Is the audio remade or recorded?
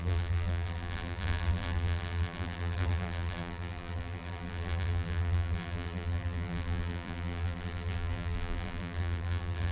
remade